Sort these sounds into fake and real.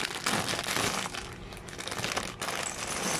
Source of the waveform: real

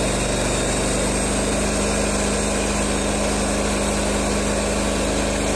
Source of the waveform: real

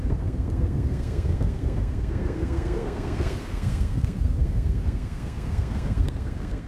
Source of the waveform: fake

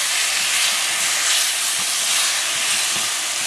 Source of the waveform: real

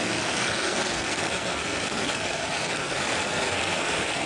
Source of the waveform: fake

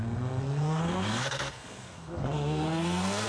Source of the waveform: fake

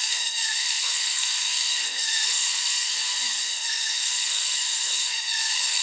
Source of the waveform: fake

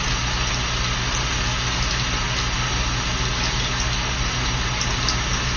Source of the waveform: real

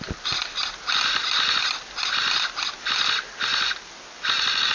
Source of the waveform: real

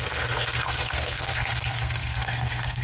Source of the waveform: fake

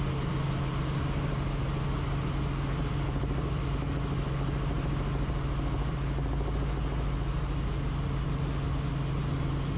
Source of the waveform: real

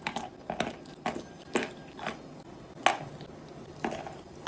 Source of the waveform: real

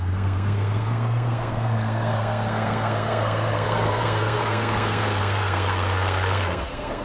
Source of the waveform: fake